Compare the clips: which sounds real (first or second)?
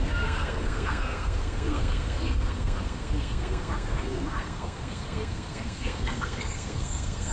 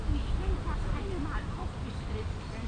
second